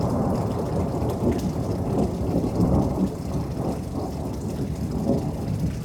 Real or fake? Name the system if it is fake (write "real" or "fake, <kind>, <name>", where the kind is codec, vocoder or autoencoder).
real